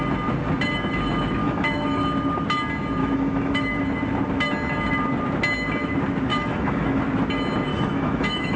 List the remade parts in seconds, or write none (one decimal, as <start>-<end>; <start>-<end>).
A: 1.4-2.0; 3.0-3.8; 6.3-7.0; 7.7-8.6